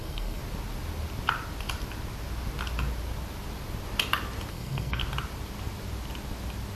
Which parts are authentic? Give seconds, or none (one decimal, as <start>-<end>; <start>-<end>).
0.4-4.5; 5.0-6.8